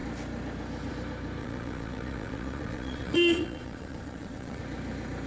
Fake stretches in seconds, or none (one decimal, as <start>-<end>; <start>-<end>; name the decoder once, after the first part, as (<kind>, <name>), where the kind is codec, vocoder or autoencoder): 1.4-4.6 (vocoder, Vocos)